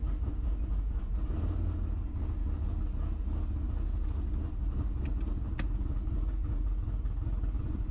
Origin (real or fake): real